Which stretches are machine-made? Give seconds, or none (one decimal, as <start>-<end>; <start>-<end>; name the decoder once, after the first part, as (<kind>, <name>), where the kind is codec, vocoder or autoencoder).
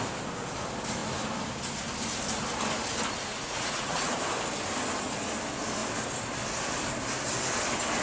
3.3-4.1 (vocoder, Vocos)